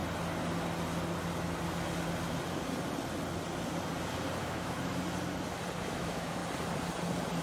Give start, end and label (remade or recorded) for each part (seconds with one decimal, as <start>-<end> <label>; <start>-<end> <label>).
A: 0.0-4.4 recorded; 4.4-4.9 remade; 4.9-5.8 recorded; 5.8-6.4 remade; 6.4-7.4 recorded